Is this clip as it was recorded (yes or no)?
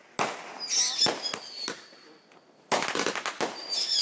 yes